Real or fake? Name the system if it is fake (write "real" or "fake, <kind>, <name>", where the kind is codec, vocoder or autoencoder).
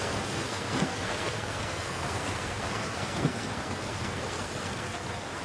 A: fake, codec, SNAC